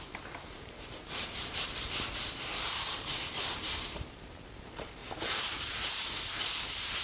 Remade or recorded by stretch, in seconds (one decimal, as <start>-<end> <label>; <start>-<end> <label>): 0.0-5.0 remade; 5.0-5.5 recorded; 5.5-7.0 remade